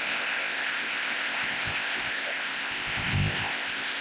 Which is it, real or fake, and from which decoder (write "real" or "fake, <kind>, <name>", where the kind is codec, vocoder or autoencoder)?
fake, codec, ZipCodec